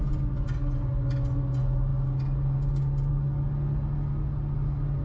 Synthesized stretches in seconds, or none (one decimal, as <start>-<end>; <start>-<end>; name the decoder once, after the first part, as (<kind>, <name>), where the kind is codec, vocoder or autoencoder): none